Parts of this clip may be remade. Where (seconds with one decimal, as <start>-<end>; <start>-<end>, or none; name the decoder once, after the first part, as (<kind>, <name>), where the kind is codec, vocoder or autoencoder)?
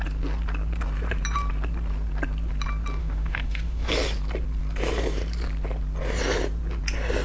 3.0-3.9 (autoencoder, DAC-VAE)